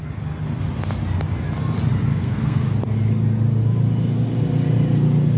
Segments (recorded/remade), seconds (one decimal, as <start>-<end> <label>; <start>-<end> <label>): 0.0-2.1 recorded; 2.1-2.6 remade; 2.6-5.4 recorded